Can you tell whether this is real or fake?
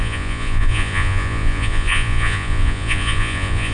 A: fake